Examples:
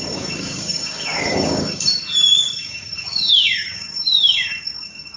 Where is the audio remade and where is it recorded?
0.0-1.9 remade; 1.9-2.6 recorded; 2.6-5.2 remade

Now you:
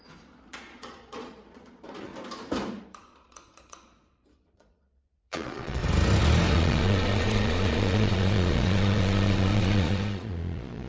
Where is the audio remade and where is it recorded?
0.0-2.1 remade; 2.1-2.8 recorded; 2.8-5.8 remade; 5.8-6.5 recorded; 6.5-10.9 remade

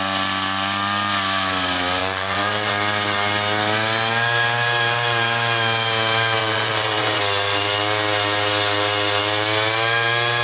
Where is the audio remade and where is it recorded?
0.0-2.0 recorded; 2.0-2.7 remade; 2.7-6.4 recorded; 6.4-7.2 remade; 7.2-10.4 recorded

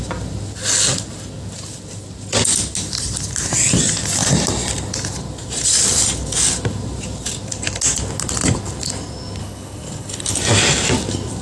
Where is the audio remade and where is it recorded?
0.0-9.4 recorded; 9.4-10.4 remade; 10.4-11.4 recorded